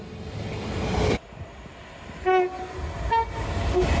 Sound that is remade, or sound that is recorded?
recorded